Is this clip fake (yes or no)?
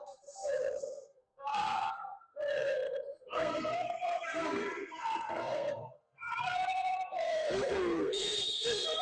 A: yes